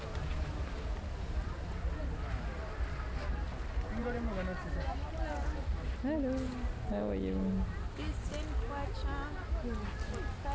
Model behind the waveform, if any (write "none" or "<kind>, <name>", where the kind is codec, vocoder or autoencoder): none